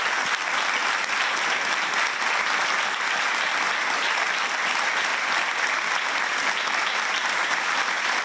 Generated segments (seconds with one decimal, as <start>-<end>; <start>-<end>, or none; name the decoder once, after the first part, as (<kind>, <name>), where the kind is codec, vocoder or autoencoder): none